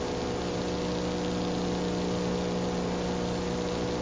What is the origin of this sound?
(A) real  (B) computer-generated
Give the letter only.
A